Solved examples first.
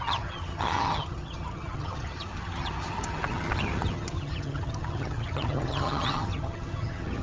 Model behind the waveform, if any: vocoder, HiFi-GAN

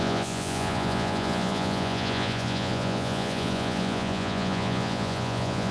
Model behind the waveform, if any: vocoder, Vocos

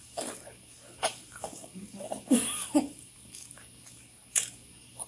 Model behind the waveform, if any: codec, DAC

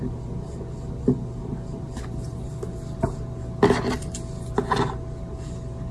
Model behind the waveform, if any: none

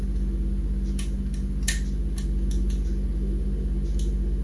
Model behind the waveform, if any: none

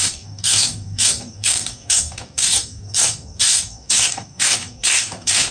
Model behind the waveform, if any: codec, DAC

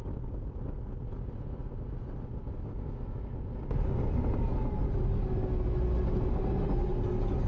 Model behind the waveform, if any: none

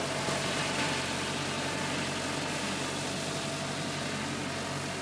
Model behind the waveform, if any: none